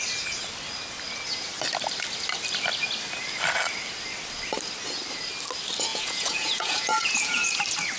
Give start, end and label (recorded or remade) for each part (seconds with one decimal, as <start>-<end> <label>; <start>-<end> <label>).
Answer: 0.0-5.9 recorded; 5.9-7.6 remade; 7.6-8.0 recorded